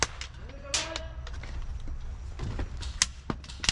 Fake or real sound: real